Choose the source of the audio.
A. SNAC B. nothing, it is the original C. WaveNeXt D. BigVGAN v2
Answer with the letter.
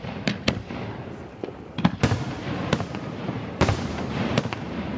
D